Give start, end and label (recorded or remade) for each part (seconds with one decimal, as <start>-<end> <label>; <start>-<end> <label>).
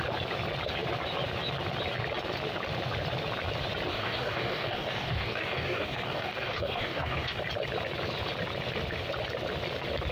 0.0-3.9 recorded; 3.9-7.4 remade; 7.4-10.1 recorded